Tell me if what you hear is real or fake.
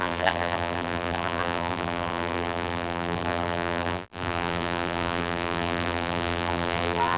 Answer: fake